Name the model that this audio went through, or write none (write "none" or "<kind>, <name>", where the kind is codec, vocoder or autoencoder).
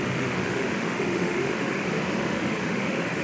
autoencoder, DAC-VAE